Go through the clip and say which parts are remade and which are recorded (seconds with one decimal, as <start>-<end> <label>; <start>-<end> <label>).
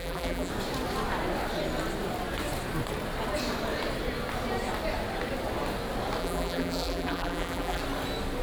0.0-0.5 remade; 0.5-6.2 recorded; 6.2-7.8 remade; 7.8-8.4 recorded